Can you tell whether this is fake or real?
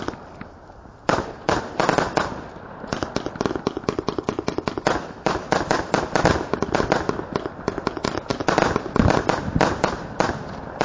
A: real